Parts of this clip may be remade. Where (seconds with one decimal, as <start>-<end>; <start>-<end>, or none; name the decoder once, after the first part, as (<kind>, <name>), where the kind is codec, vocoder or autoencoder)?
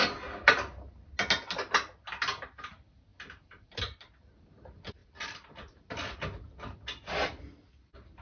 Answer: 3.1-3.8 (vocoder, BigVGAN v2); 5.0-5.9